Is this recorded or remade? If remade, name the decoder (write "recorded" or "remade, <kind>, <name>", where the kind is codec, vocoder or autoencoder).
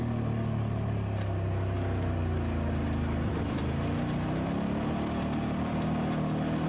recorded